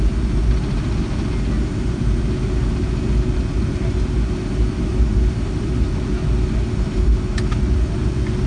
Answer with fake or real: real